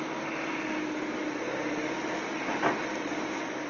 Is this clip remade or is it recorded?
recorded